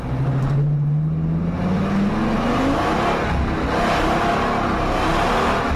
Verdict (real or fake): real